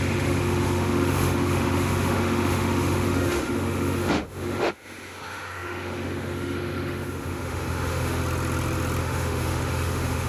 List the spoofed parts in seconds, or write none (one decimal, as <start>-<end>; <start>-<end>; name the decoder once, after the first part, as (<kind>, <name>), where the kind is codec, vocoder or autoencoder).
0.0-8.2 (autoencoder, DAC-VAE); 9.0-10.3